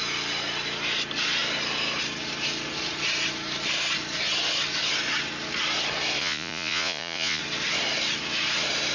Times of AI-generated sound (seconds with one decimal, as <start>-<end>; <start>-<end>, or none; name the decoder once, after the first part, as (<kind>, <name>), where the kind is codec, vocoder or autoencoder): 6.2-7.4 (vocoder, Vocos)